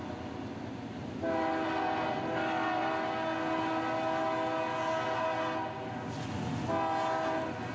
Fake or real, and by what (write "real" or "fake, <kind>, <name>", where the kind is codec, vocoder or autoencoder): real